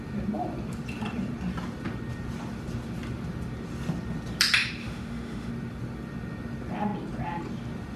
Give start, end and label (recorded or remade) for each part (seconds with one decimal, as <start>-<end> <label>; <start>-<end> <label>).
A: 0.0-4.8 recorded; 4.8-5.5 remade; 5.5-8.0 recorded